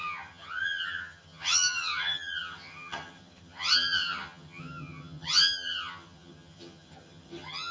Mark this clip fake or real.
fake